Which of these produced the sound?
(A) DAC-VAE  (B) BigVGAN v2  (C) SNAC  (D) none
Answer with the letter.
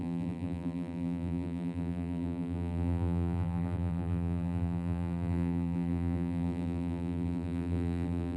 B